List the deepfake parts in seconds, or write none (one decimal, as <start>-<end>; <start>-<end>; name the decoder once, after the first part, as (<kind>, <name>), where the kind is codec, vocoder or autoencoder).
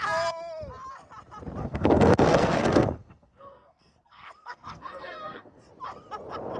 1.6-5.6 (codec, SNAC)